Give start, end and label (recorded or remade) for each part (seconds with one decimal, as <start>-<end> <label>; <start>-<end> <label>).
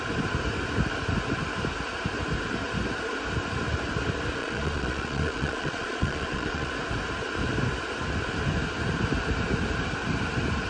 0.0-4.4 recorded; 4.4-6.7 remade; 6.7-10.7 recorded